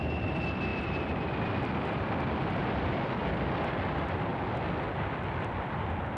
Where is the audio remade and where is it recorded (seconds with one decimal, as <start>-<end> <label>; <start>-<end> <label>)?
0.0-4.3 remade; 4.3-5.3 recorded; 5.3-6.2 remade